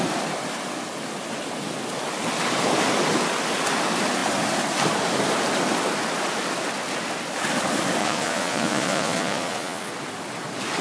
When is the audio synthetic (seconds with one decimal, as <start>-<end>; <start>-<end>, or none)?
8.0-9.9